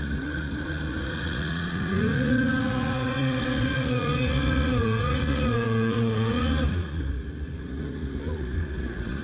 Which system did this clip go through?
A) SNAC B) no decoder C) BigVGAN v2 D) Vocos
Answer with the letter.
D